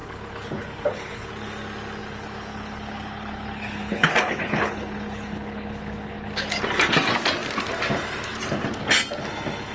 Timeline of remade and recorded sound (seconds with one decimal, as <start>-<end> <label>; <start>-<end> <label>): 0.0-1.3 remade; 1.3-2.0 recorded; 2.0-6.3 remade; 6.3-9.7 recorded